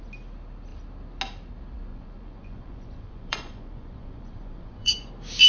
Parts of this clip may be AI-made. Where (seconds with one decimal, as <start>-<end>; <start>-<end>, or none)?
1.9-5.1